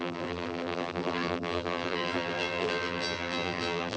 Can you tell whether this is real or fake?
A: fake